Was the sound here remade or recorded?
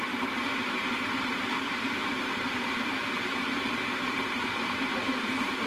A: remade